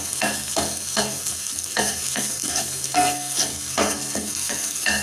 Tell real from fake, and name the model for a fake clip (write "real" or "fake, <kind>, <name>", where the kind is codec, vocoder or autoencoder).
fake, codec, SNAC